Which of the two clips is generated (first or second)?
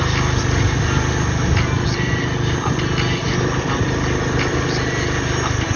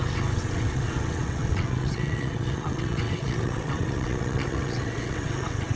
second